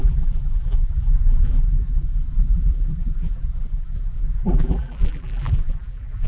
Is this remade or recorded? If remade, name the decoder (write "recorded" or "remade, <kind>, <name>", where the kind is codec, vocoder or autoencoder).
remade, vocoder, BigVGAN v2